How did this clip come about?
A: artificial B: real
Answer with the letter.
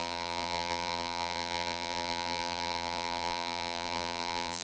A